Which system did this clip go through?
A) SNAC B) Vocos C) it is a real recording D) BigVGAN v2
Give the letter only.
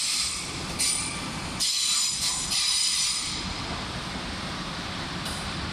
D